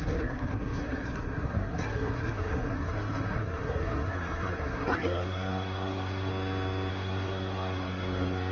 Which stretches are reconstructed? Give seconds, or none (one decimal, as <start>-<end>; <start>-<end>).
0.0-6.3; 6.9-8.5